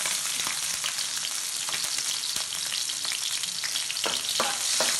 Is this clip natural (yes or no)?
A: yes